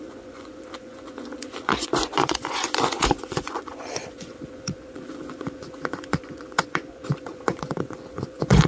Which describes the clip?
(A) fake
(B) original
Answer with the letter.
A